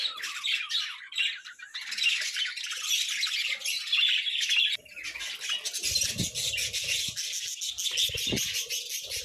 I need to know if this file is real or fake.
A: real